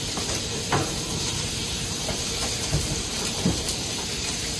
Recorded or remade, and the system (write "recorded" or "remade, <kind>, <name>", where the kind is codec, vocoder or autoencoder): remade, vocoder, BigVGAN v2